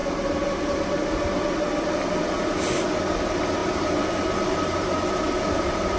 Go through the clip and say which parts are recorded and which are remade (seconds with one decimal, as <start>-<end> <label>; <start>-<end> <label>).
0.0-1.1 remade; 1.1-3.6 recorded; 3.6-6.0 remade